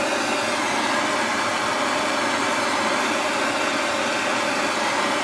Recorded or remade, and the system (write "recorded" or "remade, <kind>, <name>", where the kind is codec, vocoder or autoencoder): recorded